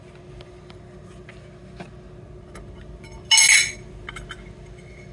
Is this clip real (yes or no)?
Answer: yes